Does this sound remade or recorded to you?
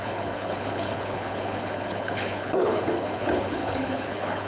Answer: remade